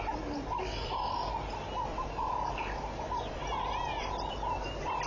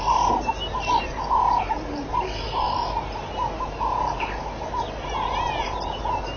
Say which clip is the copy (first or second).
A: first